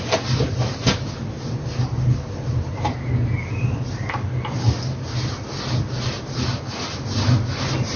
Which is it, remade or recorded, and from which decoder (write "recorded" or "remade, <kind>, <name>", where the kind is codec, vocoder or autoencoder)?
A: recorded